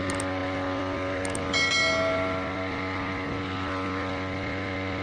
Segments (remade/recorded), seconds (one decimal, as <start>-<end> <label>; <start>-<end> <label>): 0.0-5.0 recorded